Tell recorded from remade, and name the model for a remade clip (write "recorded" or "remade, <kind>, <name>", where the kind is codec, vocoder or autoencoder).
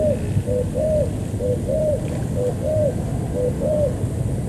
recorded